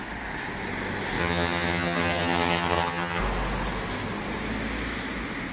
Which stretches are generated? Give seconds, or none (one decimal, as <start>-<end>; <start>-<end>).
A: 1.2-3.2